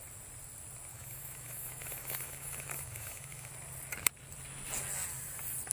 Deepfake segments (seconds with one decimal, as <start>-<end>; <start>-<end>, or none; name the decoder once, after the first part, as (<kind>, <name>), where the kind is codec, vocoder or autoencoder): 0.9-3.5 (autoencoder, DAC-VAE)